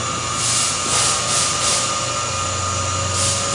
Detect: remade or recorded recorded